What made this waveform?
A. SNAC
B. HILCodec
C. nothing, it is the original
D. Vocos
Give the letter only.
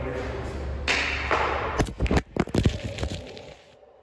C